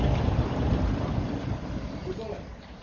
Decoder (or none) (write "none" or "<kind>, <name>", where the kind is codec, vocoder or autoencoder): none